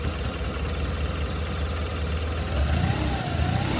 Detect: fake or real real